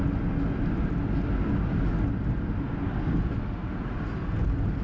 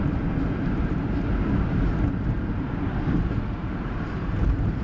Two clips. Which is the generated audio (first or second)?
second